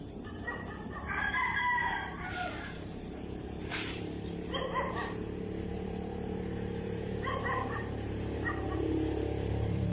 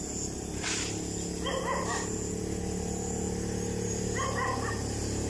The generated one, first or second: first